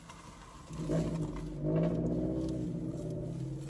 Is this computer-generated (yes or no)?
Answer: no